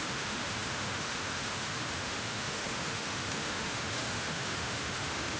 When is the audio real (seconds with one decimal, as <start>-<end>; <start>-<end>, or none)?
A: none